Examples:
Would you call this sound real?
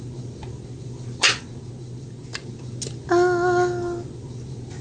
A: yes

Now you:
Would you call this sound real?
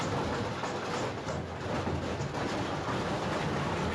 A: yes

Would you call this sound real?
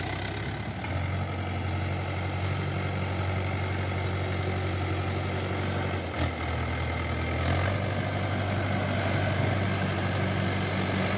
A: yes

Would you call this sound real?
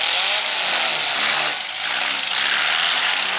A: yes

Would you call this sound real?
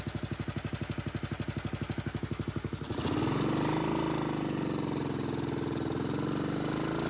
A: yes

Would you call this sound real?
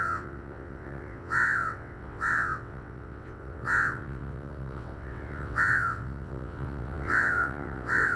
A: no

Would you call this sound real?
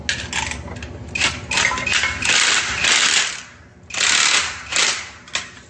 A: yes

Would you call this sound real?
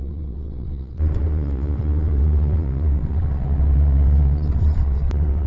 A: no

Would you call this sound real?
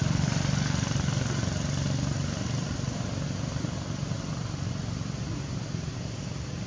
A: yes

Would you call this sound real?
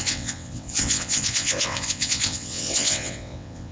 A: no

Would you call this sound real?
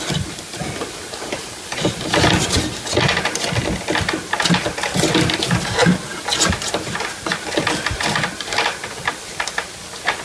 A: yes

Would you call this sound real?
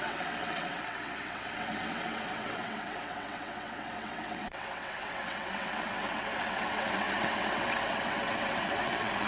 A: no